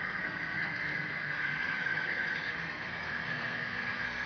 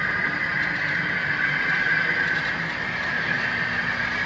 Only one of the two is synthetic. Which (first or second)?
first